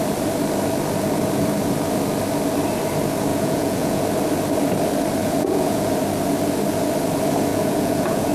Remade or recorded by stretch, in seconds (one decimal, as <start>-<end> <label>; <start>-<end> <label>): 0.0-3.3 recorded; 3.3-4.0 remade; 4.0-5.2 recorded; 5.2-5.9 remade; 5.9-7.5 recorded; 7.5-8.3 remade